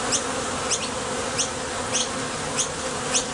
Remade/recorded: recorded